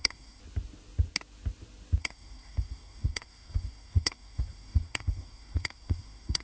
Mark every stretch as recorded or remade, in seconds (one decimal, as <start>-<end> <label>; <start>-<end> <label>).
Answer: 0.0-0.4 remade; 0.4-2.0 recorded; 2.0-6.4 remade